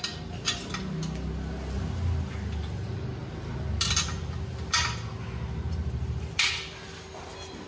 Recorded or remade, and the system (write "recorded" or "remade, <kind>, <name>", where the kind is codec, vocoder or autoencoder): recorded